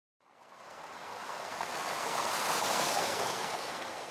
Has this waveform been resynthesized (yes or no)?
yes